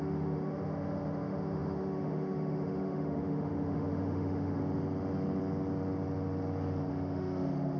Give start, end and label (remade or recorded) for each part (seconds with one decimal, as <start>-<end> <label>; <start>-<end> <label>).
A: 0.0-4.6 remade; 4.6-6.9 recorded; 6.9-7.8 remade